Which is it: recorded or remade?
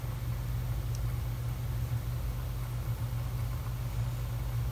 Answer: recorded